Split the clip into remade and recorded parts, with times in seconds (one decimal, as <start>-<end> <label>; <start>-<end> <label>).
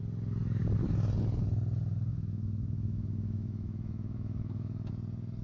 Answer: 0.0-2.1 recorded; 2.1-4.9 remade; 4.9-5.4 recorded